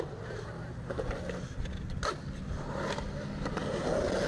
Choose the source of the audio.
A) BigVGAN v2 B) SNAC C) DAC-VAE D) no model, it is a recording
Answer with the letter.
D